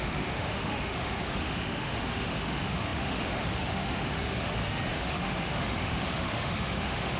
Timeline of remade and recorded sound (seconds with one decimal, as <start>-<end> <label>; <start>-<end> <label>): 0.0-7.2 remade